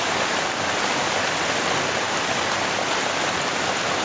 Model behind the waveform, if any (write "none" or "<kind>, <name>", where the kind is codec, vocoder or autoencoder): none